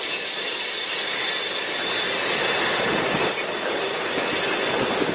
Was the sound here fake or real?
real